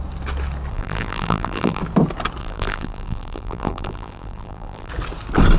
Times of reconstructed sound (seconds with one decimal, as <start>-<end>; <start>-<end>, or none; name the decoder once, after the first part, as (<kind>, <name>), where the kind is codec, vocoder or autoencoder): 0.7-1.8 (vocoder, BigVGAN v2); 2.4-4.9